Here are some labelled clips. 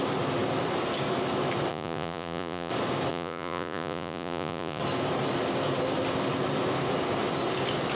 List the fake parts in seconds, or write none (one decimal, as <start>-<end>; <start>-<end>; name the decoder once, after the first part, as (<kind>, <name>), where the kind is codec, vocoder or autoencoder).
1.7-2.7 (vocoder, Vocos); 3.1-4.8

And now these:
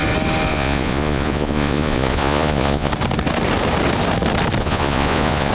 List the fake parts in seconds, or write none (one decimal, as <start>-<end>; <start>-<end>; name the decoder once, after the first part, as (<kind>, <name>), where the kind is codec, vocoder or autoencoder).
0.5-2.9 (vocoder, Vocos); 4.6-5.5

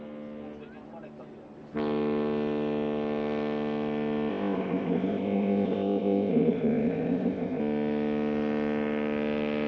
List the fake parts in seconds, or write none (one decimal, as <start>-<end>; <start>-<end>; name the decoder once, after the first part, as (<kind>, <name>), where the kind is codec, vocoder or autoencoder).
4.3-7.6 (codec, ZipCodec)